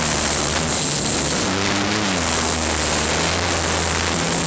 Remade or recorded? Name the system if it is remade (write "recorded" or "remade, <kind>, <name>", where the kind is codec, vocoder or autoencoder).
recorded